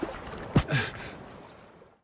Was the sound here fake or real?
real